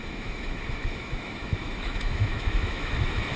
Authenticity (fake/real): fake